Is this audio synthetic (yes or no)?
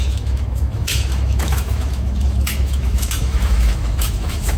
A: yes